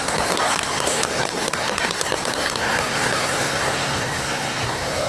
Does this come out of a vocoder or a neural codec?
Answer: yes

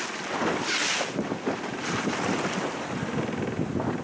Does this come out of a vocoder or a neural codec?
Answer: no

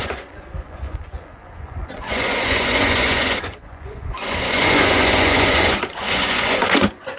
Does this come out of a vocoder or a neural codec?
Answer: yes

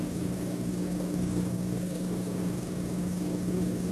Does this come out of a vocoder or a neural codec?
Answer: yes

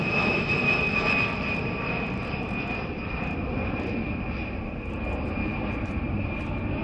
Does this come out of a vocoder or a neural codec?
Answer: yes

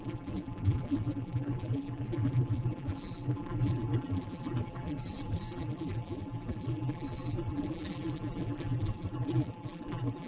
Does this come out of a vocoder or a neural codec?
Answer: yes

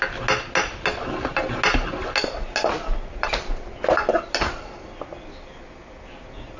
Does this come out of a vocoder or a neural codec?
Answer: no